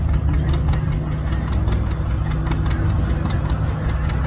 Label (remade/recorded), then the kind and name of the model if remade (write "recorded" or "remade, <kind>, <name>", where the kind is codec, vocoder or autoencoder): recorded